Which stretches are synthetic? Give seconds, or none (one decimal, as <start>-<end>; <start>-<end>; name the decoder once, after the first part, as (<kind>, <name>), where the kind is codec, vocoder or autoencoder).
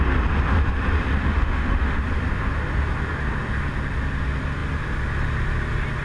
1.2-2.0 (autoencoder, DAC-VAE)